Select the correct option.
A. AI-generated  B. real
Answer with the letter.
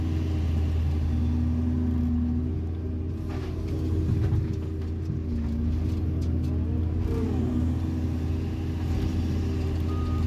B